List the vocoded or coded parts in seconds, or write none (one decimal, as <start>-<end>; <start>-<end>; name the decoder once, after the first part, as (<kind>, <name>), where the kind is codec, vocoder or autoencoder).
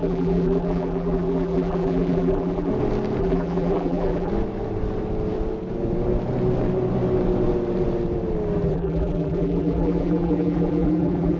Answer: 0.0-2.7 (vocoder, BigVGAN v2); 3.2-4.3; 8.7-11.4